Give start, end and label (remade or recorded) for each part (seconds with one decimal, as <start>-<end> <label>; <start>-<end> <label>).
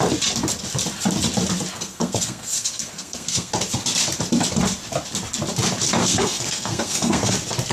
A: 0.0-1.7 recorded; 1.7-3.5 remade; 3.5-6.0 recorded; 6.0-7.3 remade; 7.3-7.7 recorded